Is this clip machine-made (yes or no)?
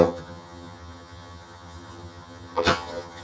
yes